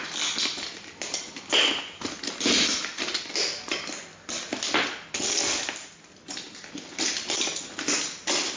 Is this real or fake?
real